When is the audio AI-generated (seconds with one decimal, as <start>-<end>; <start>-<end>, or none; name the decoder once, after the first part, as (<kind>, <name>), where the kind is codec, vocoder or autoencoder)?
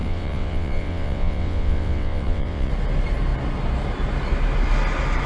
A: 0.0-2.7 (vocoder, WaveNeXt)